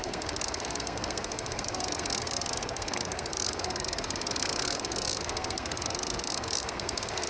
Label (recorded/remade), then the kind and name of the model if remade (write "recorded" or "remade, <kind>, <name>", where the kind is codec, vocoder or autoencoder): remade, codec, SNAC